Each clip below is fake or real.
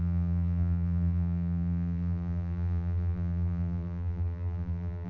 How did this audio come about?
fake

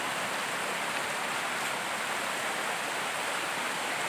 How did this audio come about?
real